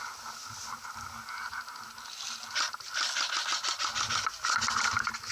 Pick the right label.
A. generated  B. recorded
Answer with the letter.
B